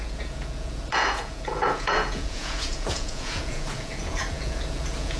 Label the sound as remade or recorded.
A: remade